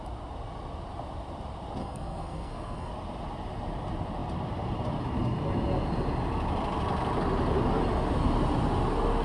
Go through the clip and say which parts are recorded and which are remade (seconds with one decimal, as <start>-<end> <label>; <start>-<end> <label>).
0.0-1.8 recorded; 1.8-2.9 remade; 2.9-9.2 recorded